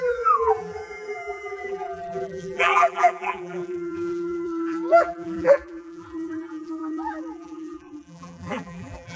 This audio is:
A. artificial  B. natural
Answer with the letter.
A